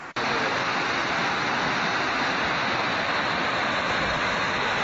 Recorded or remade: recorded